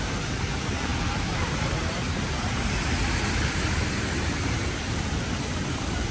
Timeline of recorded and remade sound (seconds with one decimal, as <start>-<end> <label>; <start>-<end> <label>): 0.0-6.1 remade